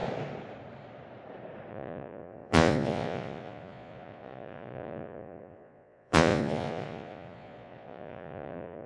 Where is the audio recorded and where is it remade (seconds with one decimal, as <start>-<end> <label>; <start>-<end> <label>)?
0.0-1.7 recorded; 1.7-8.9 remade